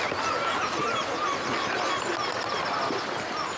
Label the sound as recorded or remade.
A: recorded